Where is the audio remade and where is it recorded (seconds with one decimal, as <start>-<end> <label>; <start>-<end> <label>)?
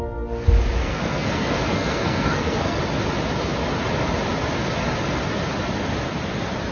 0.0-0.8 recorded; 0.8-2.8 remade; 2.8-6.7 recorded